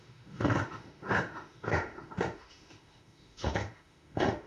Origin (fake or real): fake